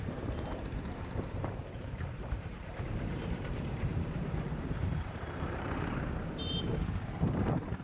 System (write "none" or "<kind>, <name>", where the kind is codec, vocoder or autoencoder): vocoder, BigVGAN v2